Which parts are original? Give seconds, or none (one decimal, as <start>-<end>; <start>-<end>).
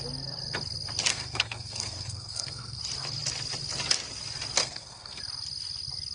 0.0-1.1; 2.8-4.6; 5.2-6.1